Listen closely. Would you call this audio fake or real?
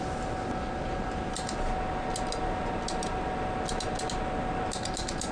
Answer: real